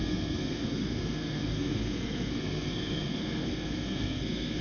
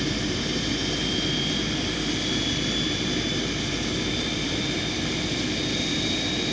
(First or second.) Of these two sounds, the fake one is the first